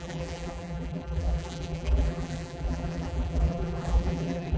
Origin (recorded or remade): remade